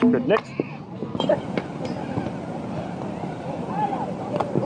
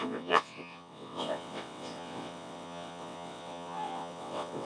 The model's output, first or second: second